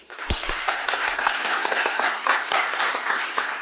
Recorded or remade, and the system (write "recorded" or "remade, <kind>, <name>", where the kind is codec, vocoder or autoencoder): remade, codec, SNAC